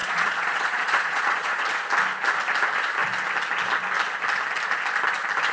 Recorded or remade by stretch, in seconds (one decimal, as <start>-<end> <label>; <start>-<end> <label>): 0.0-1.6 remade; 1.6-5.5 recorded